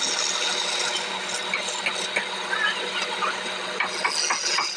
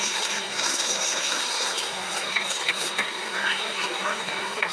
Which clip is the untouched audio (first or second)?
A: first